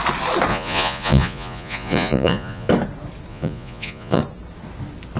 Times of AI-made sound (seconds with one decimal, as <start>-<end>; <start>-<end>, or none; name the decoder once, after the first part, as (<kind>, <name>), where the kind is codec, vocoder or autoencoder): 0.5-2.7 (vocoder, Vocos); 3.3-4.2